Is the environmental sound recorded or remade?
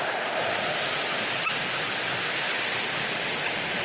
recorded